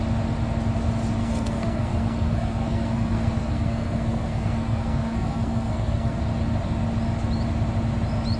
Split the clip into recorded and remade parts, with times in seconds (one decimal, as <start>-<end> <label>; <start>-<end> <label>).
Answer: 0.0-1.2 recorded; 1.2-6.2 remade; 6.2-8.4 recorded